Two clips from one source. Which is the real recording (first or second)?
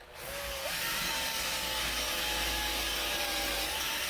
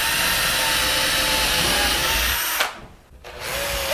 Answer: second